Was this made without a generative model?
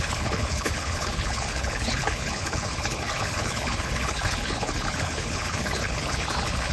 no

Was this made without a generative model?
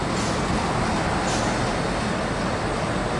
yes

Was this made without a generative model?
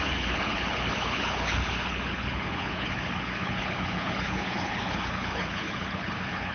no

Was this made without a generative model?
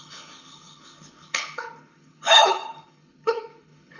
no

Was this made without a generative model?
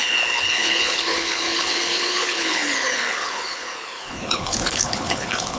no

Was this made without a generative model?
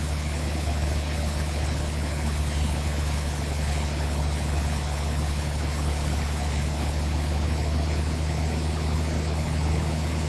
no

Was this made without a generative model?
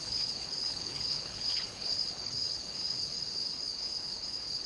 no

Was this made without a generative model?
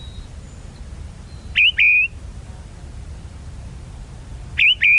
yes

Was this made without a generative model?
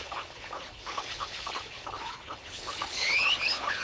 no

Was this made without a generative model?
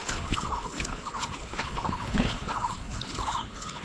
no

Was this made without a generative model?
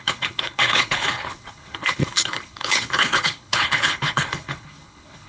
no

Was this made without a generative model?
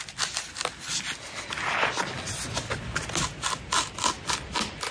yes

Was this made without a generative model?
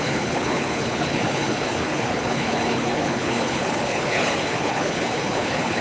no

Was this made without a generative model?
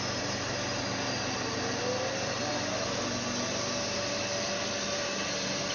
yes